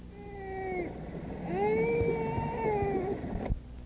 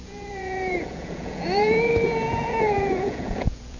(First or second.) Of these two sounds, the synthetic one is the second